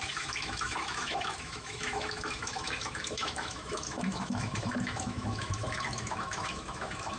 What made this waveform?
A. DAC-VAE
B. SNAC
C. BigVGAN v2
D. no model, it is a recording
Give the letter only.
A